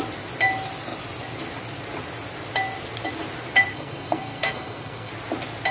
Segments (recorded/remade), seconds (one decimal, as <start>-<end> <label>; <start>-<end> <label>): 0.0-3.7 recorded; 3.7-5.1 remade; 5.1-5.7 recorded